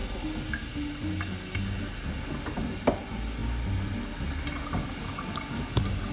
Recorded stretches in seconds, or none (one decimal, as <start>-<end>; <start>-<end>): 0.0-6.1